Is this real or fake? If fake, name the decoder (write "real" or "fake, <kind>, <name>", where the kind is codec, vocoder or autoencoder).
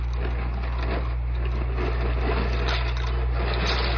real